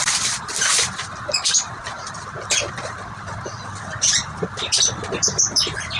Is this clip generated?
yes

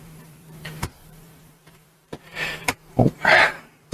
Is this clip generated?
yes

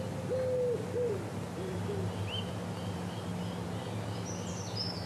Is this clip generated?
no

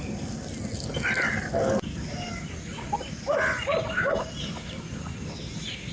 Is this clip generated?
no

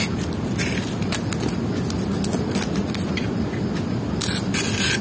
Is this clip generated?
no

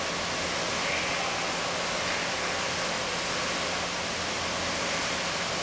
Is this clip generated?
no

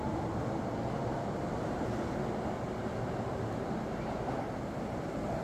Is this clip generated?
no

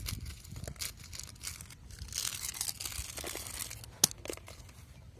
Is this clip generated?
no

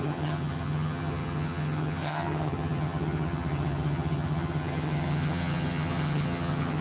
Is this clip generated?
yes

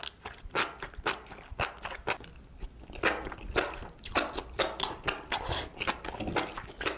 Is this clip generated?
no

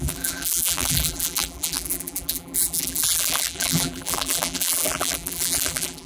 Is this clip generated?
yes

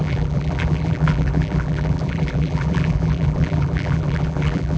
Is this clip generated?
yes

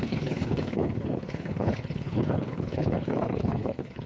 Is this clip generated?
yes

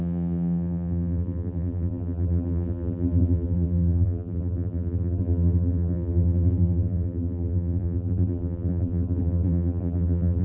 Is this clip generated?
yes